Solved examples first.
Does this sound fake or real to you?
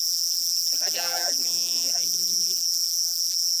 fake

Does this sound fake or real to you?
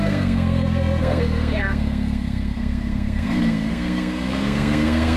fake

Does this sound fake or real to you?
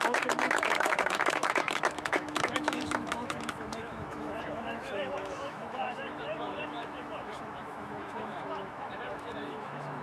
fake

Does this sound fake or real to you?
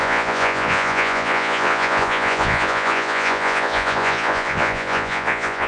fake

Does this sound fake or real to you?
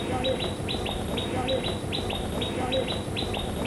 fake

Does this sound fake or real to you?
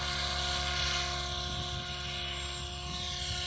real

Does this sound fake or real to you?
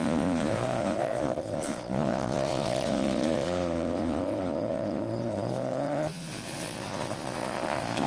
fake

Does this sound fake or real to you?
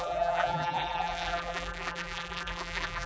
fake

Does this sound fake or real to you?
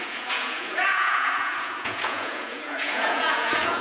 fake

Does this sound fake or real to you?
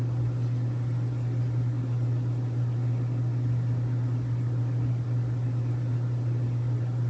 real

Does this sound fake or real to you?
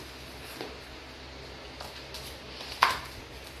real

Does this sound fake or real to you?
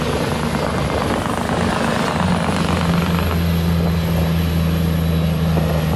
real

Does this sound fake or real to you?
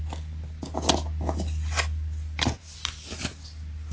real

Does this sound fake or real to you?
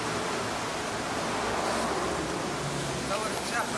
real